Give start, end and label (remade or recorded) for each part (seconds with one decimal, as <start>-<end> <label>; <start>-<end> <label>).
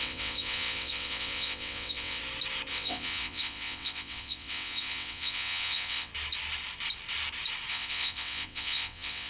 0.0-2.2 remade; 2.2-2.7 recorded; 2.7-6.1 remade; 6.1-7.7 recorded; 7.7-9.3 remade